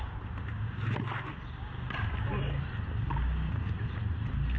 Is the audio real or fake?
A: real